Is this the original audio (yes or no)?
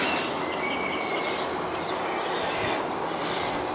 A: yes